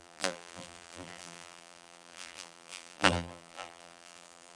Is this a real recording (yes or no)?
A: no